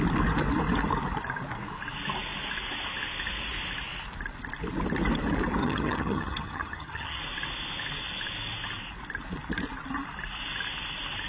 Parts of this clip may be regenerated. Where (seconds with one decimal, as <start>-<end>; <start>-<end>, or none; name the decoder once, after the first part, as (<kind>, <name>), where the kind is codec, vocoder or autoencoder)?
5.6-7.2 (vocoder, HiFi-GAN)